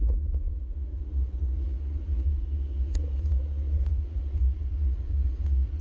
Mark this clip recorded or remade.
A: remade